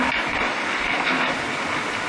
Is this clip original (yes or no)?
yes